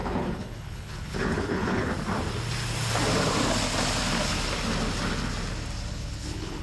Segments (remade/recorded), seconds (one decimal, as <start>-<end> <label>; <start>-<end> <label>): 0.0-1.9 remade; 1.9-5.9 recorded; 5.9-6.6 remade